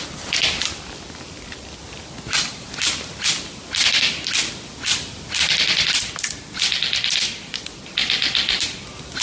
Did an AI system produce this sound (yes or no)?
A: no